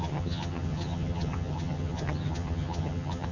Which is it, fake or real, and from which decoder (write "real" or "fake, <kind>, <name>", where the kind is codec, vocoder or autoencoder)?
fake, vocoder, HiFi-GAN